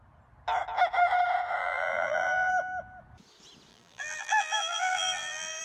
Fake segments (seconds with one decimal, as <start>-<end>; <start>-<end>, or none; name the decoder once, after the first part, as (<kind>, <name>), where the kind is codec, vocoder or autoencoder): 1.6-2.5 (vocoder, BigVGAN v2); 3.7-5.6